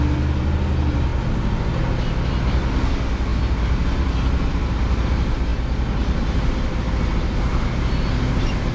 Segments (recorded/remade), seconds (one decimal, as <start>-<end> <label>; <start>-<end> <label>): 0.0-8.7 recorded